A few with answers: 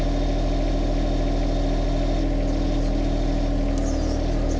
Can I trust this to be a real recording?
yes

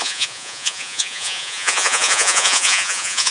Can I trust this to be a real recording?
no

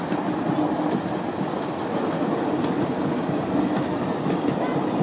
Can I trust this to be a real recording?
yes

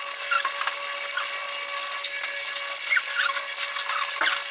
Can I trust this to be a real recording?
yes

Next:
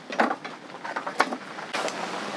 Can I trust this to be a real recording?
yes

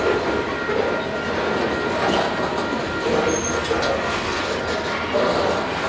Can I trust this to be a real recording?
yes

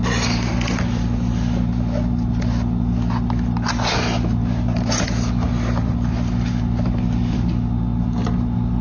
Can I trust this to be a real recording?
yes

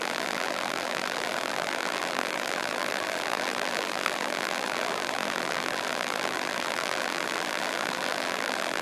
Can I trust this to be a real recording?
no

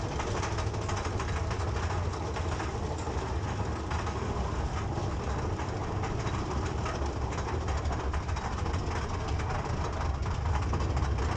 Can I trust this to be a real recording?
yes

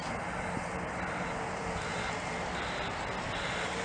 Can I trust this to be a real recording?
yes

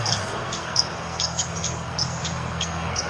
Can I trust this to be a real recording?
no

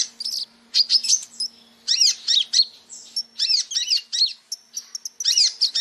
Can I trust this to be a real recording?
yes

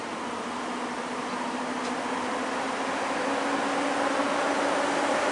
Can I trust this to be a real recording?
yes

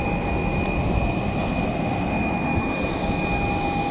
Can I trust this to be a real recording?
yes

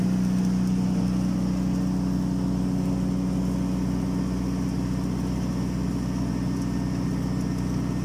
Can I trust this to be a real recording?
yes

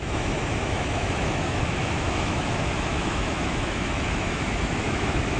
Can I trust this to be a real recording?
no